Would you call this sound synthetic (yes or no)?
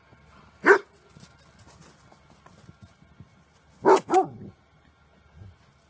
no